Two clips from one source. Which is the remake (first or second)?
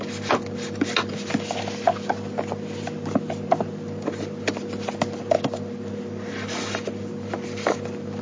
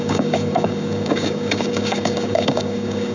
second